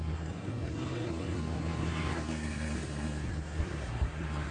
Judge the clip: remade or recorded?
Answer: remade